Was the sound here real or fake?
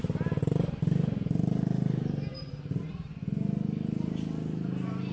real